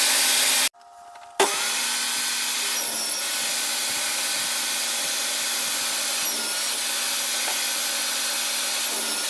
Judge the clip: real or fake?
real